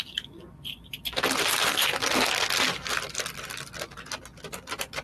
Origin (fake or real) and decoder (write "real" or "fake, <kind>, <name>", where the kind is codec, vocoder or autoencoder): real